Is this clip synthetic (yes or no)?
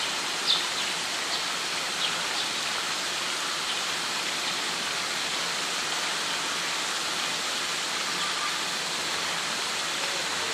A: no